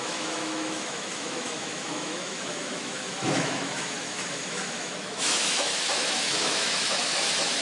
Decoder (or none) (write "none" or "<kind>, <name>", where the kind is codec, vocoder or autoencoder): autoencoder, DAC-VAE